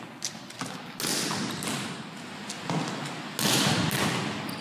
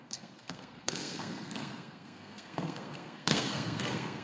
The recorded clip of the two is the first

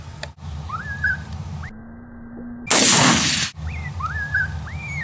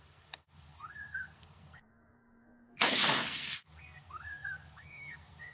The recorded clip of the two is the first